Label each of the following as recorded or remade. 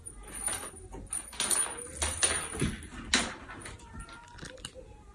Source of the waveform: recorded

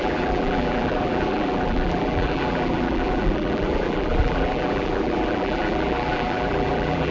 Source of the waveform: remade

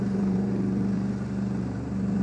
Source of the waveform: remade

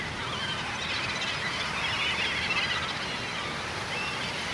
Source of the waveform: recorded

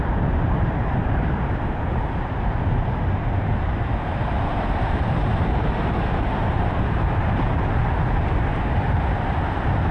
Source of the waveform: remade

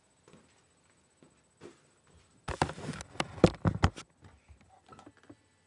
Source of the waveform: recorded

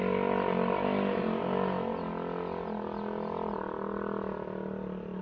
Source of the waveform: recorded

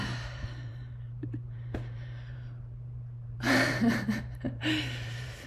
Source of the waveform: remade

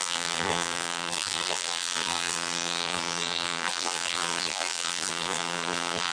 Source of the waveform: remade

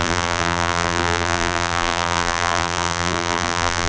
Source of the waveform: remade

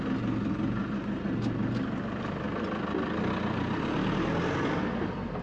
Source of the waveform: recorded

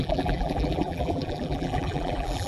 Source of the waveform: remade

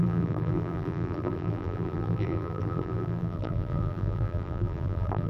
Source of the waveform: remade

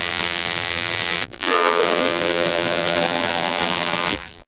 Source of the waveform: remade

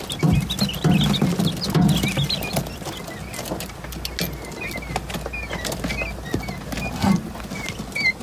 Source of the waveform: recorded